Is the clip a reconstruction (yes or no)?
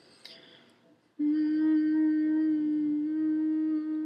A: no